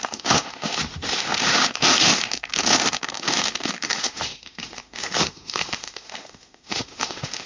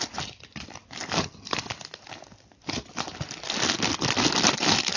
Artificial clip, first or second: first